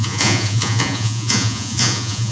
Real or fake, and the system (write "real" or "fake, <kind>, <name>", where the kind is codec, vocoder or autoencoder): fake, vocoder, Vocos